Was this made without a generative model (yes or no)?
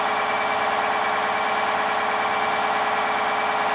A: yes